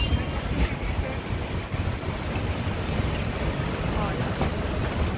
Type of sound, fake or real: real